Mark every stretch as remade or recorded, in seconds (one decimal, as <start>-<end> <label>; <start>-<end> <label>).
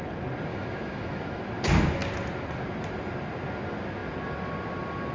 0.0-0.5 recorded; 0.5-1.4 remade; 1.4-5.1 recorded